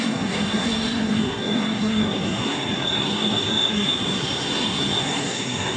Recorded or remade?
remade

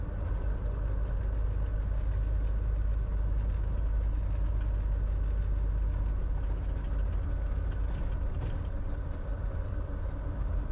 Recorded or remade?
recorded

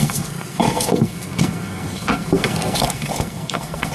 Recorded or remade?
remade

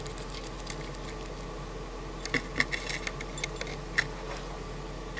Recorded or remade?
recorded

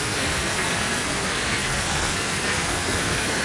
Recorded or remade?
remade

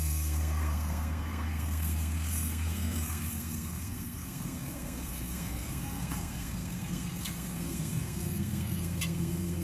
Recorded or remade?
remade